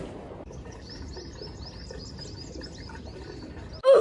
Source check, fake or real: real